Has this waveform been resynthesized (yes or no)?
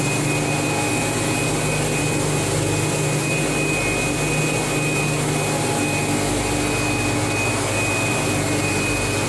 no